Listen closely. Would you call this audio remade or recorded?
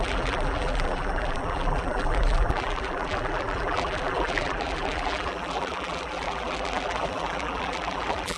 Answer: remade